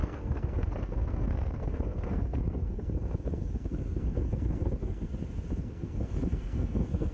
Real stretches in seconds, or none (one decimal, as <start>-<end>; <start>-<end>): 5.1-5.6